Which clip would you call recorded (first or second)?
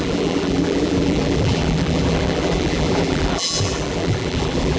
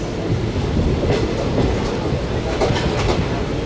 second